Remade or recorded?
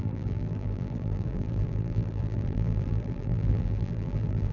remade